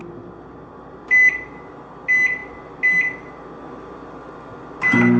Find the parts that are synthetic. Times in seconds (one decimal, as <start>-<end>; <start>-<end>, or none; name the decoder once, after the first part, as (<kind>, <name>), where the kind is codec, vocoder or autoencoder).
none